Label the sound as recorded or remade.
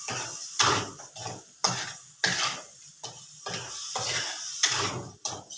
recorded